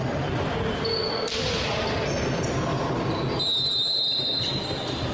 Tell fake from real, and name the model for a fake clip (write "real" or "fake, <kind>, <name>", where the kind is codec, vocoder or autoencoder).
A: real